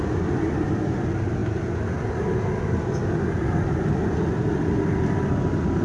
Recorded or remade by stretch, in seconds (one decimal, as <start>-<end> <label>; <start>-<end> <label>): 0.0-5.8 recorded